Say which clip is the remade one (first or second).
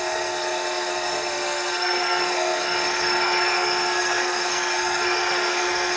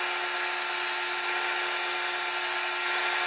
first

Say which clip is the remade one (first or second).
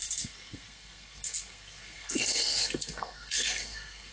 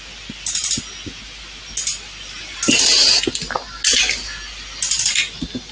first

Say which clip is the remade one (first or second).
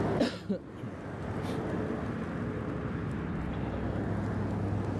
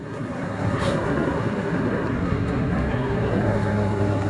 second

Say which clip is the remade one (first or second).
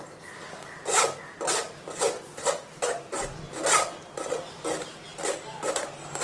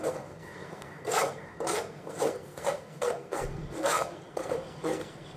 second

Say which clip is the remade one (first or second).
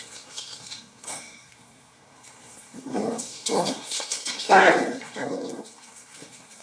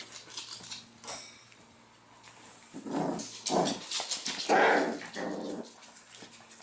first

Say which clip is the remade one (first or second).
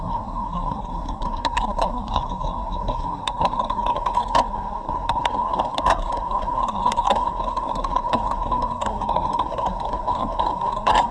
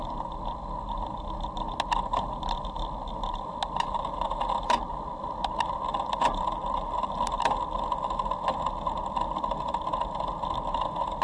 first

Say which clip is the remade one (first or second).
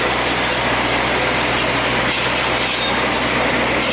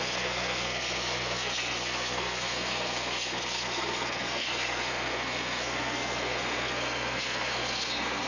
second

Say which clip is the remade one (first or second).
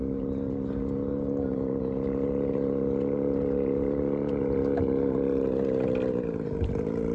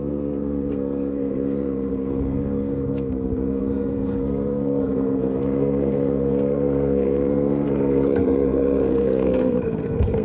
second